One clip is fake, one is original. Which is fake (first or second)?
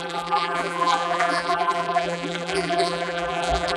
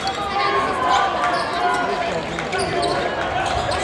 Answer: first